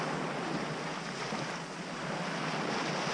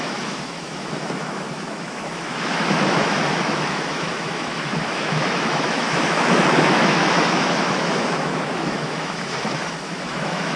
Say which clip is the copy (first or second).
second